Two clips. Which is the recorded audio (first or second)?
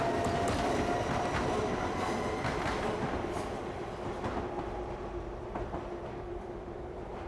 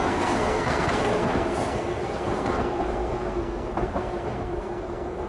first